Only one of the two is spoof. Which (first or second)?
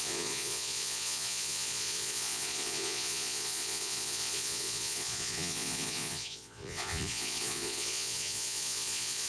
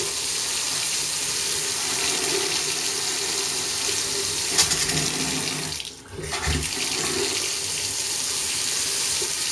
first